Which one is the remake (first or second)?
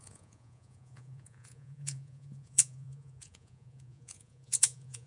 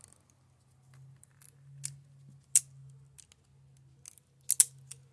first